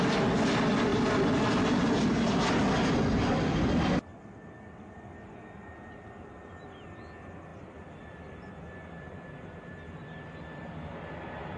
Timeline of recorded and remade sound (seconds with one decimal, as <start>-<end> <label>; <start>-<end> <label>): 0.0-7.5 recorded; 7.5-8.6 remade; 8.6-11.6 recorded